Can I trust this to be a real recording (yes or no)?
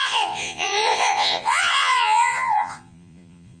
no